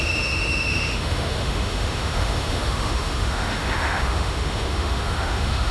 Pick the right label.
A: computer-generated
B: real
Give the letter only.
A